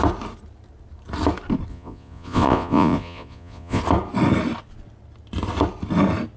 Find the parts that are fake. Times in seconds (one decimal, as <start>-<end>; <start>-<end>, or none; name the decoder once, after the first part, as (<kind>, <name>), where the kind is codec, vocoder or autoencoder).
1.7-3.8 (vocoder, Vocos)